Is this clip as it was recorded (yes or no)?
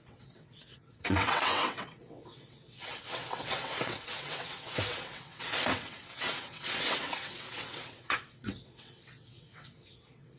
no